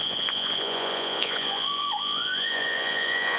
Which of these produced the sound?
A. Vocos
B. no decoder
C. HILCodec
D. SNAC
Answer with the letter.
A